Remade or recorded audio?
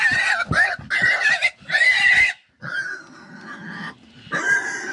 recorded